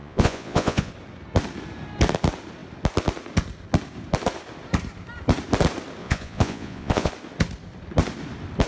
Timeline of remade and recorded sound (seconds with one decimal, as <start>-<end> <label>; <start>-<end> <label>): 0.0-0.9 remade; 0.9-6.0 recorded; 6.0-7.1 remade; 7.1-8.7 recorded

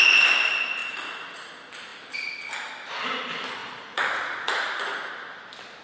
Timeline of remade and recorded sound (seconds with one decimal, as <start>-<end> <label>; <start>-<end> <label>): 0.0-0.8 recorded; 0.8-1.5 remade; 1.5-3.6 recorded; 3.6-5.1 remade; 5.1-5.8 recorded